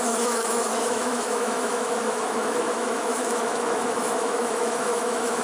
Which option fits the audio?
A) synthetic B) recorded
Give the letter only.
A